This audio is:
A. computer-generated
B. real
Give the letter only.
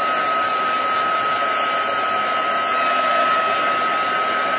B